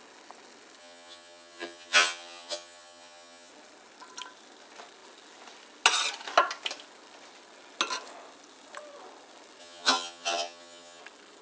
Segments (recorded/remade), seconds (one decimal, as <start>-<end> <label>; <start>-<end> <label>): 0.0-0.8 recorded; 0.8-3.5 remade; 3.5-9.6 recorded; 9.6-11.0 remade; 11.0-11.4 recorded